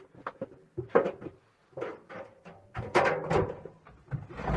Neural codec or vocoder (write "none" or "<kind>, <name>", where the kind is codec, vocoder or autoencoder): none